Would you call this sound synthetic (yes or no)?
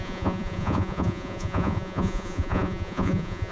yes